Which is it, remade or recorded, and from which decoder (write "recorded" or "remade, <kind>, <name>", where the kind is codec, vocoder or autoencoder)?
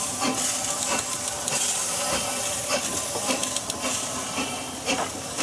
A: recorded